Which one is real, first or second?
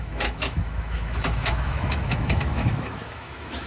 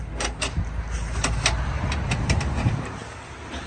second